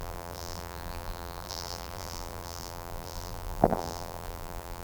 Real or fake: fake